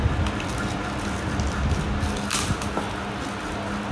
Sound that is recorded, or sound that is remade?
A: recorded